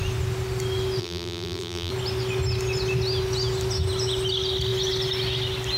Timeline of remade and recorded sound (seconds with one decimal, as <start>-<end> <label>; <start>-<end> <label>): 0.0-1.0 recorded; 1.0-1.9 remade; 1.9-5.8 recorded

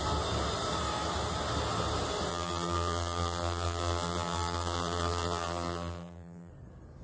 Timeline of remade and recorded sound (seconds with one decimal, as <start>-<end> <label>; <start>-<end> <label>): 0.0-2.3 recorded; 2.3-6.5 remade; 6.5-7.0 recorded

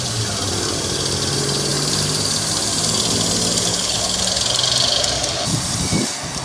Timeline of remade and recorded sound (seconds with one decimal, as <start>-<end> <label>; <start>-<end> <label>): 0.0-3.7 recorded; 3.7-4.2 remade; 4.2-6.4 recorded